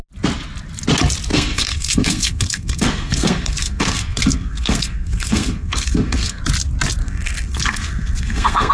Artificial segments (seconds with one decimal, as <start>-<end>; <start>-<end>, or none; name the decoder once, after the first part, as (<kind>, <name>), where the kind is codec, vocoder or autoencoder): 1.3-6.4 (codec, SNAC); 7.0-8.7